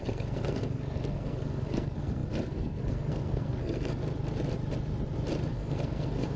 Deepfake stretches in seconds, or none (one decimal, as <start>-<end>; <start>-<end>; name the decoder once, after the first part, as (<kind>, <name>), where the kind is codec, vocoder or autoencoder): 0.0-4.0 (codec, SNAC); 5.5-6.4